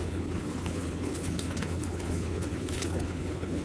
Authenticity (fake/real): fake